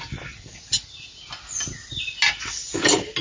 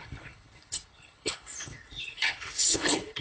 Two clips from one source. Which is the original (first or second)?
first